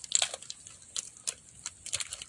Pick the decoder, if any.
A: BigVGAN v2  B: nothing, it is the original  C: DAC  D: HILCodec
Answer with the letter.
B